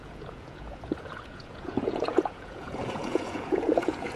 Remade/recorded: remade